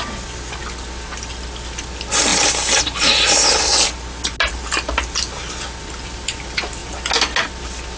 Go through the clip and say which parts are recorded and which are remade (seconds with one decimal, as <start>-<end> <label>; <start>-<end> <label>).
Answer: 0.0-8.0 recorded